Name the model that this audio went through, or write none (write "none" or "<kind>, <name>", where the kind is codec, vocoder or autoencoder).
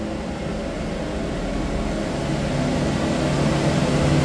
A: none